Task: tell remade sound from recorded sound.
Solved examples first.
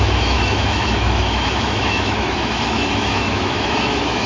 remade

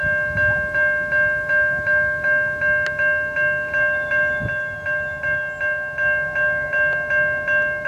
recorded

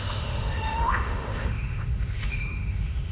remade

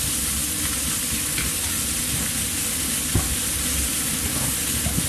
recorded